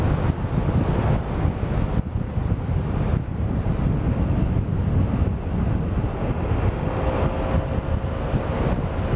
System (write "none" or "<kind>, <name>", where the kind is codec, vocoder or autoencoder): none